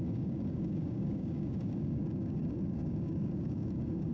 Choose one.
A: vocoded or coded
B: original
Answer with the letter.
A